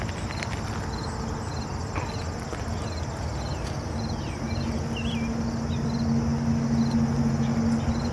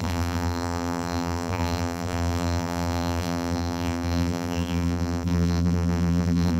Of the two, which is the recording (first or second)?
first